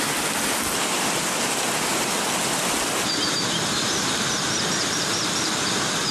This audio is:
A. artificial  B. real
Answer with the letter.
B